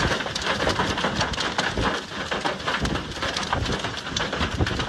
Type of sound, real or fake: real